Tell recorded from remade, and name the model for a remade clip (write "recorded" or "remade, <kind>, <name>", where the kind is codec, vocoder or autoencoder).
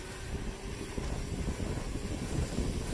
recorded